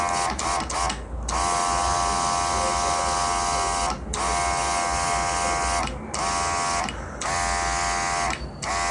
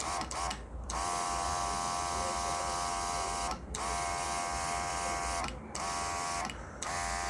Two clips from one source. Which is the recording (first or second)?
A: first